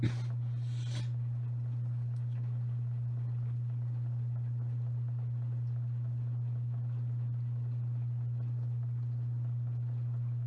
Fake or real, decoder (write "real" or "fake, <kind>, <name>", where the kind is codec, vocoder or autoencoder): real